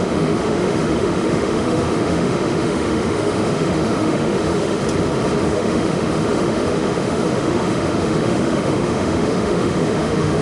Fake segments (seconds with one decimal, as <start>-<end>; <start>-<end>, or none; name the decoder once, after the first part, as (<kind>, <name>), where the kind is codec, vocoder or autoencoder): 0.0-4.8 (autoencoder, DAC-VAE); 5.4-10.4